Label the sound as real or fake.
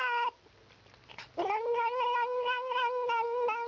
real